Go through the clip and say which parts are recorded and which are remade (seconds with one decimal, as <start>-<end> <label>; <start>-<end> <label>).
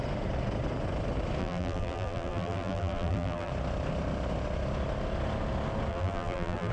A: 0.0-1.4 recorded; 1.4-3.5 remade; 3.5-5.9 recorded; 5.9-6.7 remade